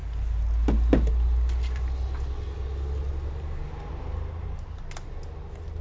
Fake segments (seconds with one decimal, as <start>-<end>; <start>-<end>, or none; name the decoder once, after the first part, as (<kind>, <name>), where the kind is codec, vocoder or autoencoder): none